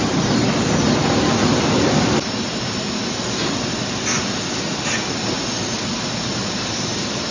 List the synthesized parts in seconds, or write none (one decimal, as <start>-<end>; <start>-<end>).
none